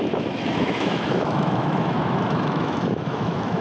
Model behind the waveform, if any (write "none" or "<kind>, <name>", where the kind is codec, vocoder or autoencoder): autoencoder, DAC-VAE